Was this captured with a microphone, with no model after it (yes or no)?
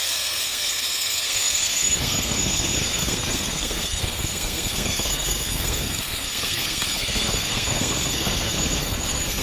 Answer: no